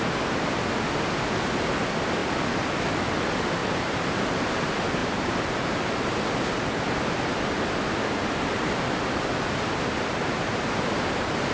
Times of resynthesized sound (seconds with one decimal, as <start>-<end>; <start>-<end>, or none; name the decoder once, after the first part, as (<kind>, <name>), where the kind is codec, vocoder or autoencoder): 3.6-4.1 (vocoder, BigVGAN v2); 5.0-6.3